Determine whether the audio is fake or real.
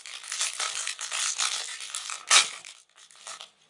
real